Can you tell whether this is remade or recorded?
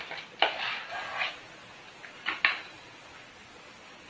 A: recorded